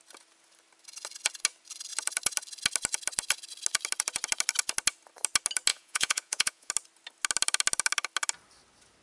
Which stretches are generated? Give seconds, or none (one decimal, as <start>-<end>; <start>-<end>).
5.7-6.7